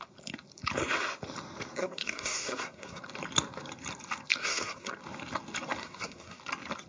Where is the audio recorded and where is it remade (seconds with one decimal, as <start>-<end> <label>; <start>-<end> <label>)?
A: 0.0-1.8 recorded; 1.8-3.0 remade; 3.0-4.4 recorded; 4.4-4.9 remade; 4.9-5.8 recorded; 5.8-6.4 remade; 6.4-6.9 recorded